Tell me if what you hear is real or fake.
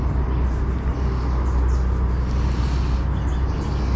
real